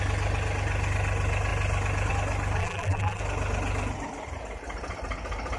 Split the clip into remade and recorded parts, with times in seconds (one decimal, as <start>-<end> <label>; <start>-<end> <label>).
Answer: 0.0-2.6 recorded; 2.6-3.2 remade; 3.2-5.6 recorded